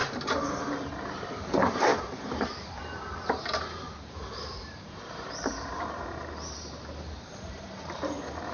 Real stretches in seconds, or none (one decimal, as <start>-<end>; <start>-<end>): 0.0-0.6